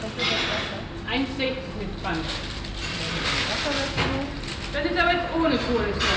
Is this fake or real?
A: real